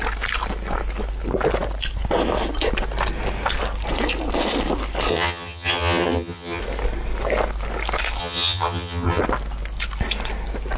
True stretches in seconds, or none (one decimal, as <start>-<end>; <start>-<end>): 0.0-5.1; 6.6-8.2; 9.2-10.8